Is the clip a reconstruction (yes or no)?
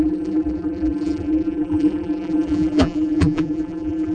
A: yes